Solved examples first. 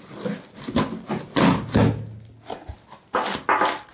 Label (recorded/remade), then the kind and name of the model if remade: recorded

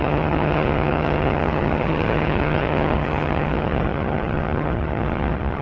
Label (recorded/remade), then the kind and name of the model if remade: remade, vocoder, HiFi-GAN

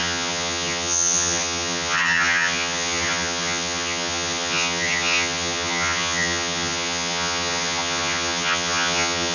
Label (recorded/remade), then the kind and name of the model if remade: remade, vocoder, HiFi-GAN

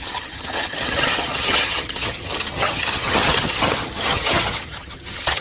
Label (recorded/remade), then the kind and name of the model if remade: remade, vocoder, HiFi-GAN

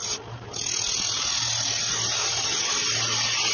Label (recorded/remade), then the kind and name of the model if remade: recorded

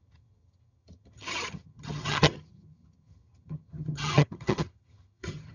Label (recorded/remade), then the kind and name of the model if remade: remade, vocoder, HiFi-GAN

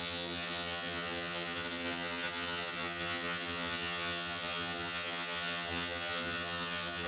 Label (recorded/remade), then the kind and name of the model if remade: remade, vocoder, HiFi-GAN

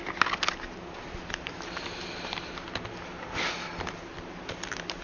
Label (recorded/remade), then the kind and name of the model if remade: recorded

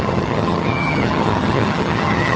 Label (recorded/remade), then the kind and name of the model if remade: remade, vocoder, HiFi-GAN